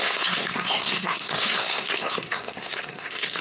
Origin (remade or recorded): remade